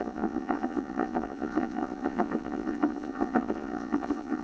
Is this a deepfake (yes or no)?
yes